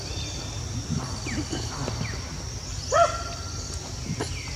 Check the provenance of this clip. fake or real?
real